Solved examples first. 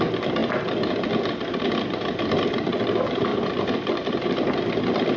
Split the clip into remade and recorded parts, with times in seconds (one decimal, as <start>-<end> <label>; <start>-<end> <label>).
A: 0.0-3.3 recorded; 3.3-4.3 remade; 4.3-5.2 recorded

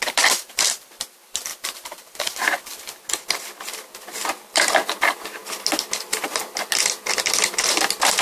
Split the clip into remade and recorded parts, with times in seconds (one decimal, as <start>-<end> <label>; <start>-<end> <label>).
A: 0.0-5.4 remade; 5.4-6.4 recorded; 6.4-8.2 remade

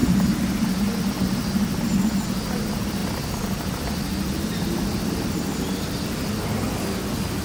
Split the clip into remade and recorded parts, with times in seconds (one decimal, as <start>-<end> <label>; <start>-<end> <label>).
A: 0.0-7.4 recorded